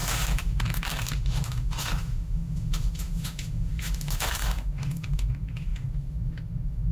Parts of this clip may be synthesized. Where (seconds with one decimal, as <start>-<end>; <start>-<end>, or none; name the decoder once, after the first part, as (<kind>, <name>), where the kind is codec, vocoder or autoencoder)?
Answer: 0.0-6.9 (autoencoder, DAC-VAE)